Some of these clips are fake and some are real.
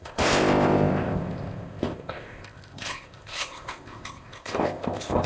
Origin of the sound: fake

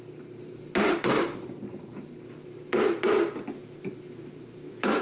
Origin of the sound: real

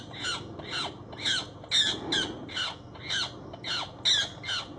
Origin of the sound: real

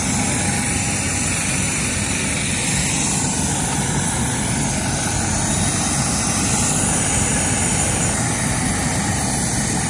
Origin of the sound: real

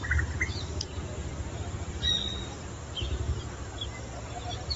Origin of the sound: real